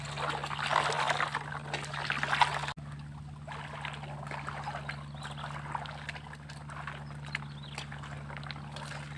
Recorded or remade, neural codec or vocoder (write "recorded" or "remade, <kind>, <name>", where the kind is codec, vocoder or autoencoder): recorded